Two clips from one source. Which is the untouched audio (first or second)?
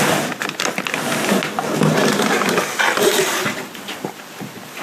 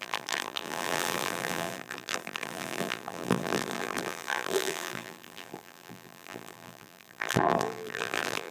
first